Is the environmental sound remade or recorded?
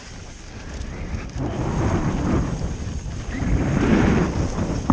recorded